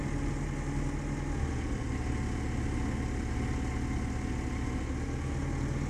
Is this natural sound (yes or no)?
yes